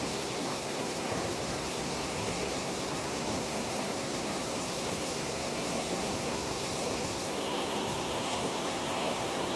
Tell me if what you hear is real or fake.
fake